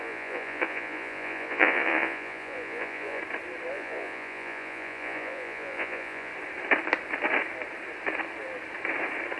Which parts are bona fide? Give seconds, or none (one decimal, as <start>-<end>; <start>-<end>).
3.2-3.7; 6.3-9.4